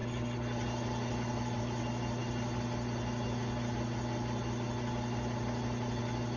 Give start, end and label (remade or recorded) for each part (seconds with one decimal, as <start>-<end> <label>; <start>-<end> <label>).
0.0-6.4 recorded